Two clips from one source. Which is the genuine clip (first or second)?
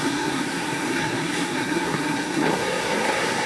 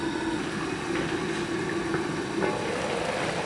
second